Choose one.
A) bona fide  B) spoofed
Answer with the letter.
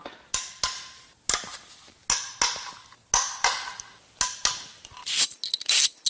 A